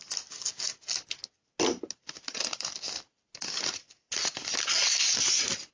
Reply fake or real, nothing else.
real